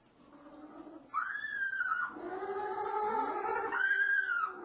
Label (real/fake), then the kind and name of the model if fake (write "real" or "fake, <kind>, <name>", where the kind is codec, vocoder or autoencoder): real